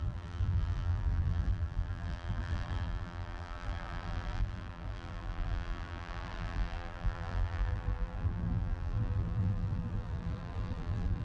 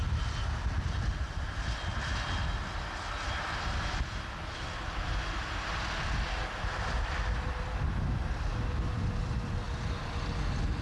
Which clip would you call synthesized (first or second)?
first